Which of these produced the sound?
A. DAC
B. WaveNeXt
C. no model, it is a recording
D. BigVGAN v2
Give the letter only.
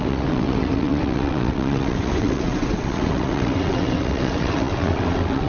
B